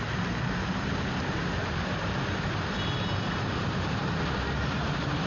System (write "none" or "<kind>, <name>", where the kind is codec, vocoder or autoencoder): vocoder, BigVGAN v2